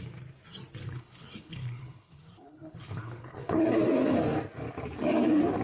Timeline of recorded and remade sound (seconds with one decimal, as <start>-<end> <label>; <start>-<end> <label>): 0.0-0.8 recorded; 0.8-3.6 remade; 3.6-5.6 recorded